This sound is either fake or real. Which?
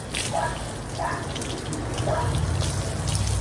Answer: real